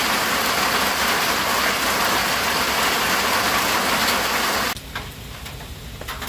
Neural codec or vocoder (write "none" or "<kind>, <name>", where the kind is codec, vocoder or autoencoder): none